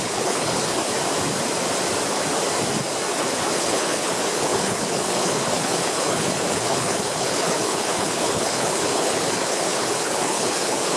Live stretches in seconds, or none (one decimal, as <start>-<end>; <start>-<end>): 0.8-3.1